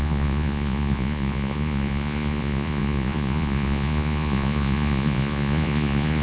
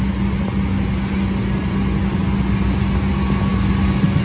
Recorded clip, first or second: second